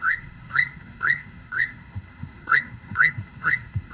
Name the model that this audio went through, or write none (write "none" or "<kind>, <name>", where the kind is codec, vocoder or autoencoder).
codec, SNAC